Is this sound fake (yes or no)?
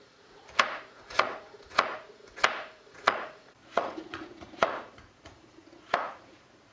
yes